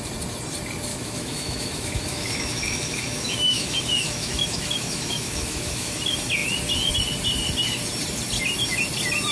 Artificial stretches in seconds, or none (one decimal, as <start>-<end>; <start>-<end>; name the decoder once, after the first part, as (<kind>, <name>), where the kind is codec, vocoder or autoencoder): 0.9-5.9 (autoencoder, DAC-VAE)